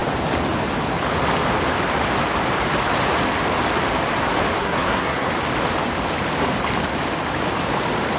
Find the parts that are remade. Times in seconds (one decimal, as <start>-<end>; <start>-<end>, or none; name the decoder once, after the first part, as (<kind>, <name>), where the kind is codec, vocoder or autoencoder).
4.6-5.3 (codec, SNAC)